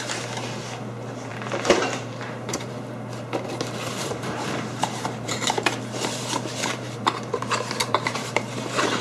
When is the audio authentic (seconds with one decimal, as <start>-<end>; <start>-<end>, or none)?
0.0-1.3; 2.7-4.0